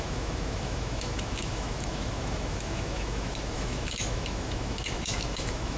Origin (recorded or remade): remade